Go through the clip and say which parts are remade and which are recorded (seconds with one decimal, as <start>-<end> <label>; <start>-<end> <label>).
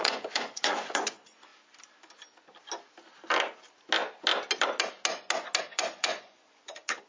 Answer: 0.0-1.5 remade; 1.5-5.6 recorded; 5.6-7.1 remade